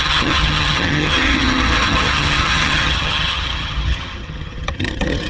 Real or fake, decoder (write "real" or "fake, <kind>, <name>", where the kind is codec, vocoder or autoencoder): fake, vocoder, HiFi-GAN